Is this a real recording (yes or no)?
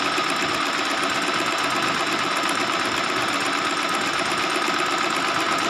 yes